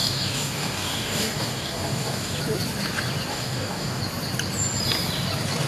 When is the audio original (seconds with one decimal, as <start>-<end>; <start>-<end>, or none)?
2.4-3.3; 4.0-5.7